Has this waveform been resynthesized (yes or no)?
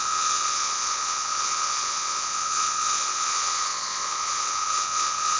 yes